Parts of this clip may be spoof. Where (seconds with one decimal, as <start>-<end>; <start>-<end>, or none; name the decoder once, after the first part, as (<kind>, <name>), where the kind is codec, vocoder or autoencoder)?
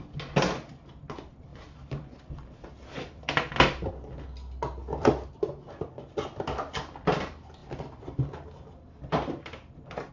1.5-3.9 (vocoder, BigVGAN v2); 4.8-5.3; 7.6-10.1